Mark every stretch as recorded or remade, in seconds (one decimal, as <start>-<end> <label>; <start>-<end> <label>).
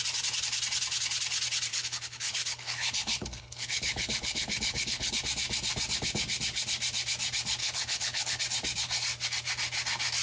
0.0-1.7 recorded; 1.7-5.2 remade; 5.2-7.6 recorded; 7.6-8.4 remade; 8.4-10.2 recorded